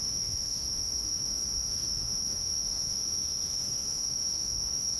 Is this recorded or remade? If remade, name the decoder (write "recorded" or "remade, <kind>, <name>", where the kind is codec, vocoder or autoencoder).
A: remade, autoencoder, DAC-VAE